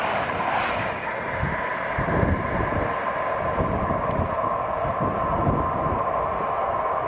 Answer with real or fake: real